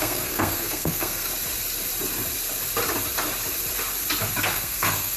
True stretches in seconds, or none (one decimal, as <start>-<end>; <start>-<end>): 1.3-4.4